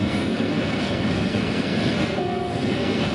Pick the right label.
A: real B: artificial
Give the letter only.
B